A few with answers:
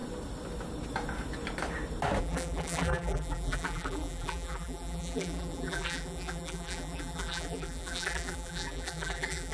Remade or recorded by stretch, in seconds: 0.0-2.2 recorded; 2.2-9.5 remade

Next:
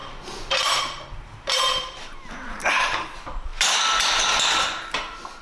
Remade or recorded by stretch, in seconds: 0.0-0.5 recorded; 0.5-3.5 remade; 3.5-4.6 recorded; 4.6-5.4 remade

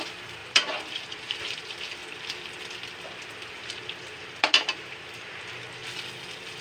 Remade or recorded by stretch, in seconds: 0.0-2.0 remade; 2.0-3.5 recorded; 3.5-5.8 remade; 5.8-6.6 recorded

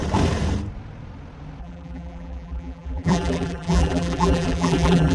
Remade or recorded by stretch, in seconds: 0.0-1.6 recorded; 1.6-5.1 remade

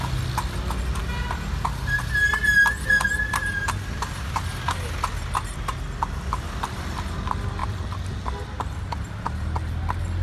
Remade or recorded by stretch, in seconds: 0.0-10.2 recorded

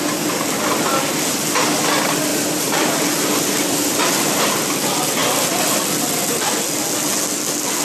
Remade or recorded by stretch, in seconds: 0.0-2.3 recorded; 2.3-4.4 remade; 4.4-7.8 recorded

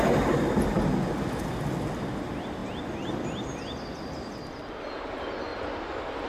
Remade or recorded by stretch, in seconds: 0.0-6.3 recorded

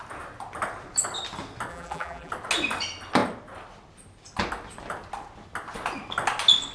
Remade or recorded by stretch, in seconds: 0.0-1.7 recorded; 1.7-2.3 remade; 2.3-6.7 recorded